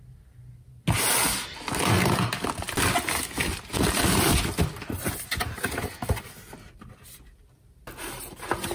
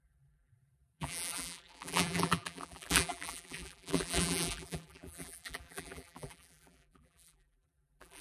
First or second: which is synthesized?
second